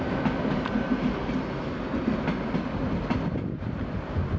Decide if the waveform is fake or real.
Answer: real